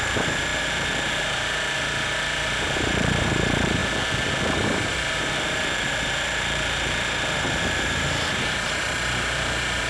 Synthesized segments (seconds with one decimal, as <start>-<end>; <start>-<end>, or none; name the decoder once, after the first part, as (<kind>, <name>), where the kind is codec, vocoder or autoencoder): 0.0-3.8 (vocoder, BigVGAN v2); 4.4-9.9